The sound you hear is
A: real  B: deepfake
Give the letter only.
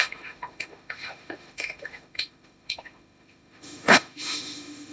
B